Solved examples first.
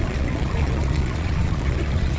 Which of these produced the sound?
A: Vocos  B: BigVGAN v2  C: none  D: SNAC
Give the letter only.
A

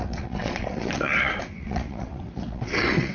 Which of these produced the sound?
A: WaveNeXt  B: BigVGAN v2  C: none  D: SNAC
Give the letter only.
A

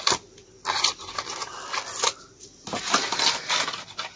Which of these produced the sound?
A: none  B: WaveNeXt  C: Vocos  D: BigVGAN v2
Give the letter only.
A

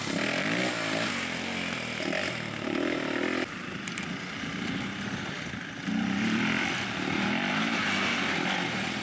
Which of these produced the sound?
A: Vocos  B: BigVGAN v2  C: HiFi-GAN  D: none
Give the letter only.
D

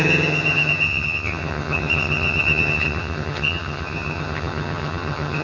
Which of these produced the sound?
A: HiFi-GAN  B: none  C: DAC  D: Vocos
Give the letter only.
A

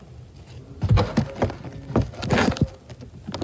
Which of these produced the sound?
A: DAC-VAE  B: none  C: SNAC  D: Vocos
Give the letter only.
B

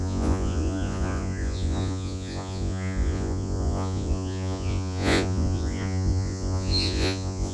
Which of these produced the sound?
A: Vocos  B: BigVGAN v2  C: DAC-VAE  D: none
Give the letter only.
A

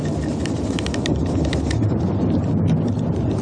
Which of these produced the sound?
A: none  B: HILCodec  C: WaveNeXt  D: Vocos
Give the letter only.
A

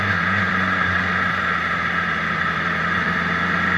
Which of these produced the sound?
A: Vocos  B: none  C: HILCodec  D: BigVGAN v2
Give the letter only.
D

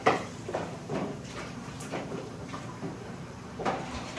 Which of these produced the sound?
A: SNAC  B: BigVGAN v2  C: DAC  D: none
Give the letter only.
B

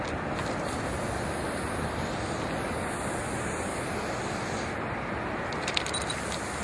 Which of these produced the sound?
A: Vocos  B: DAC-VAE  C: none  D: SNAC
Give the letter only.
C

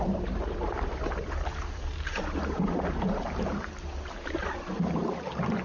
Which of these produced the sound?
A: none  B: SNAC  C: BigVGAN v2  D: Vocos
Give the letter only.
C